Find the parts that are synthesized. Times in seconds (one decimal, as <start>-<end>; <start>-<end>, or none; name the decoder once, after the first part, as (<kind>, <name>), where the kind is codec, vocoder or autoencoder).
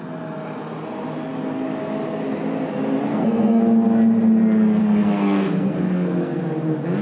3.1-3.6 (codec, SNAC); 4.8-6.4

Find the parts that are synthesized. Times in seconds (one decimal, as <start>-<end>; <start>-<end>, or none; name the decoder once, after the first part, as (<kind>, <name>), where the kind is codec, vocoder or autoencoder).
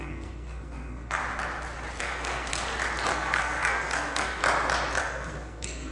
0.0-1.2 (codec, SNAC); 2.0-2.5; 3.1-4.4; 5.0-5.9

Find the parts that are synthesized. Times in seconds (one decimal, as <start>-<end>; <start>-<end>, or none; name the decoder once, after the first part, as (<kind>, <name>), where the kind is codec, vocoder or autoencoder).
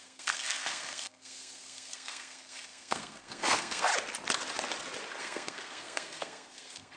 0.0-3.9 (codec, SNAC); 5.2-7.0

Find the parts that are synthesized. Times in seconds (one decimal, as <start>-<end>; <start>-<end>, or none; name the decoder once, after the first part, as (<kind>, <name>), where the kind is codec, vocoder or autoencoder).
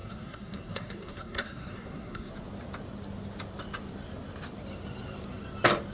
0.0-2.3 (codec, SNAC)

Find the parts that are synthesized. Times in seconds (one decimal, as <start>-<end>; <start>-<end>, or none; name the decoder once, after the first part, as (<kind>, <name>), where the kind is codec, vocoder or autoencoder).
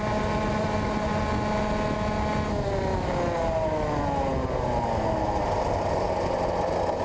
none